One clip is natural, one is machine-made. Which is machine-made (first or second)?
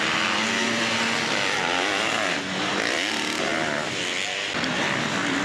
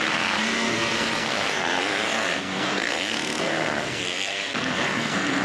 second